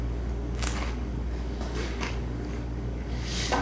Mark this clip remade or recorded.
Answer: remade